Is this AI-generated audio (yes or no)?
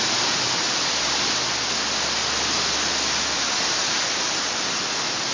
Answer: no